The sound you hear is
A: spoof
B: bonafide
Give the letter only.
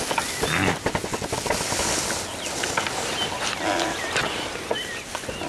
B